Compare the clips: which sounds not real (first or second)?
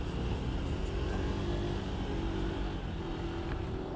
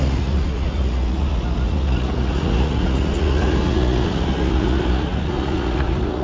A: second